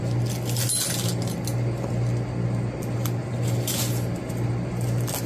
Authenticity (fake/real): real